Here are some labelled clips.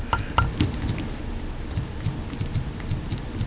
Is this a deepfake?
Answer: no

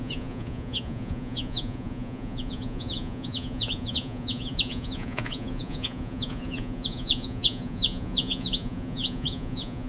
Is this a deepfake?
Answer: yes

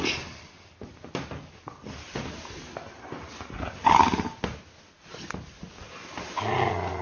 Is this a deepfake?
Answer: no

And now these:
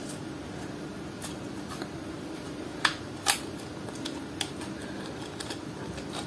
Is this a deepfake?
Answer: no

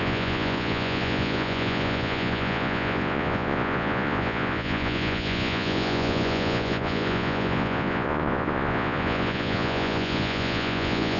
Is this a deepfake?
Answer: yes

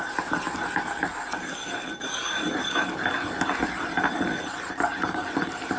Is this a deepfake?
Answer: no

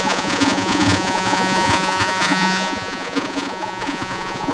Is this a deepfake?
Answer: yes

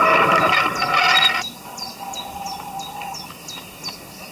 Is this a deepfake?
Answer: no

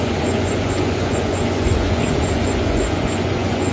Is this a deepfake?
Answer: yes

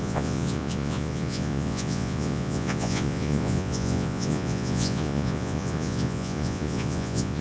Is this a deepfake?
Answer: yes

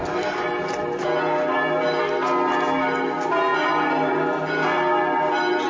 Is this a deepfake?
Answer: no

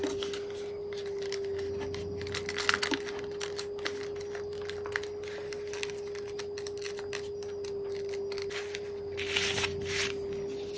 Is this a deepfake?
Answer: no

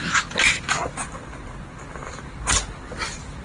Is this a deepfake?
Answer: no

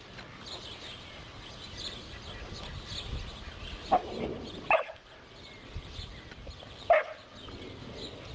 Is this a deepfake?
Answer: no